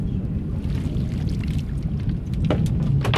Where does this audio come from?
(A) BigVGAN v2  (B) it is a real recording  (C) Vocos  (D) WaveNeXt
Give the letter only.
B